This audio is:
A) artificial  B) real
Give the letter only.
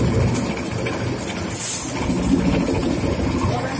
B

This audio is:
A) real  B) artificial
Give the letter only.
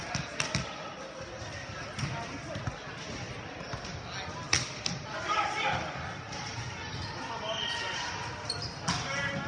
A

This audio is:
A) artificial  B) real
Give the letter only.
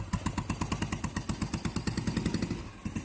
B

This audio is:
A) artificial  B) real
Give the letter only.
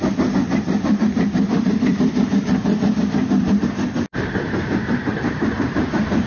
A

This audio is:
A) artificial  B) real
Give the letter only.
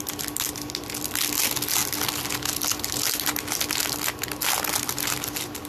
B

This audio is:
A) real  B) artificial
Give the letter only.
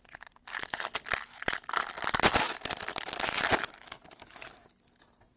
A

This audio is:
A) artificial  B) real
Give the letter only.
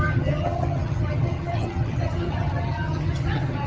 A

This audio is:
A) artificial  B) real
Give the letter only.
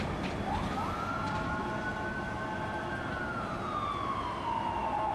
B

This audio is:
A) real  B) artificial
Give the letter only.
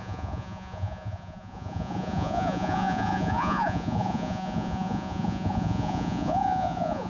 B